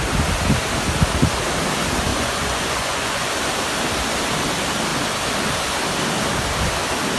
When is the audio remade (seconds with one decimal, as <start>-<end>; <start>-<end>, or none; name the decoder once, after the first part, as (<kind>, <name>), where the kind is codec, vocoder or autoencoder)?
2.1-3.3 (vocoder, Vocos)